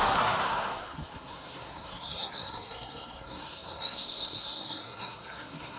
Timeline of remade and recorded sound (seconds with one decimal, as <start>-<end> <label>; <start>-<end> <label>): 0.0-5.8 remade

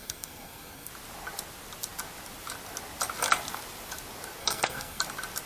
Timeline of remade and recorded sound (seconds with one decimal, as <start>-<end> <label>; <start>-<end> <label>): 0.0-0.9 remade; 0.9-4.4 recorded; 4.4-5.0 remade; 5.0-5.5 recorded

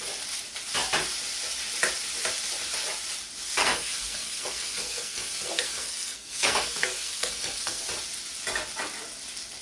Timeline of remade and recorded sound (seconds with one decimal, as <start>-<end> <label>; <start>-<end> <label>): 0.0-3.6 recorded; 3.6-7.8 remade; 7.8-9.6 recorded